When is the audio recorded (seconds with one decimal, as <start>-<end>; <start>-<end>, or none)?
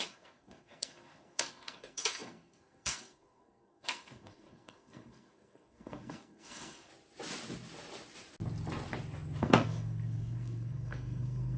6.9-9.4